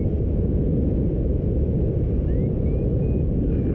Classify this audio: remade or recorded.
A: recorded